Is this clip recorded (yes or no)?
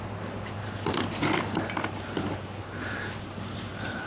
yes